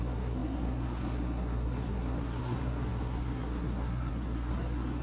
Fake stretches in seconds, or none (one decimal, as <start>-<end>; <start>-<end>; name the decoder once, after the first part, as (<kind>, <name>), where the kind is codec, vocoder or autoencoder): 0.0-5.0 (codec, SNAC)